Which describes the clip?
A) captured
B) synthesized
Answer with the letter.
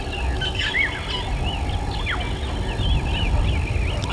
A